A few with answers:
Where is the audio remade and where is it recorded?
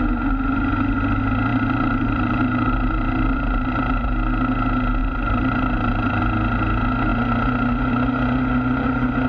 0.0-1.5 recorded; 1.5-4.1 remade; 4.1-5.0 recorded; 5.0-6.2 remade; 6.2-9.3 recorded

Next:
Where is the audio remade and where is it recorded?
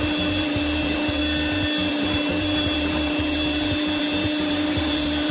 0.0-1.2 remade; 1.2-1.9 recorded; 1.9-5.3 remade